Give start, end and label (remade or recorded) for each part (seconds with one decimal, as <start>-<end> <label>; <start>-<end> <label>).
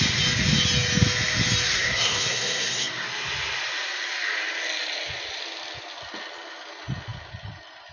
0.0-1.7 recorded; 1.7-2.9 remade; 2.9-7.9 recorded